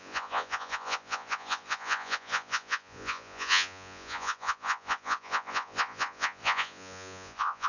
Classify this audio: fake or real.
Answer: fake